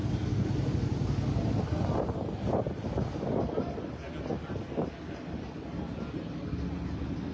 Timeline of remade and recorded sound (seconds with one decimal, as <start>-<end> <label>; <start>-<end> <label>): 0.0-7.3 recorded